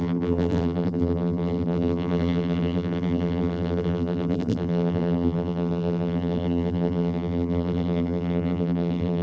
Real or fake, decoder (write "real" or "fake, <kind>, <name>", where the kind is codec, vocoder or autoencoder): fake, vocoder, BigVGAN v2